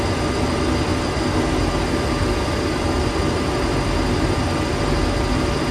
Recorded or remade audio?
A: recorded